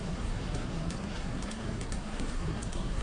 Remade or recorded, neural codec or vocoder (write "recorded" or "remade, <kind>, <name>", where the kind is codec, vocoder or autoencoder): remade, codec, SNAC